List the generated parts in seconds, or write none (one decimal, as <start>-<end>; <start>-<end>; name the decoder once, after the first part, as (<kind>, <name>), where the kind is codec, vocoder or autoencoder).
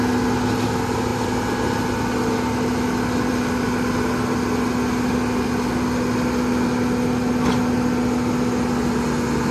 none